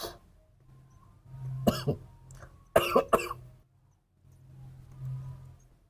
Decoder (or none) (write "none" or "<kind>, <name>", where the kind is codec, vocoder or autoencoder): none